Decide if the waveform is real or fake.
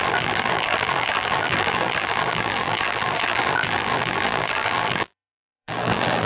fake